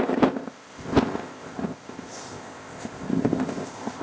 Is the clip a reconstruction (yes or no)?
yes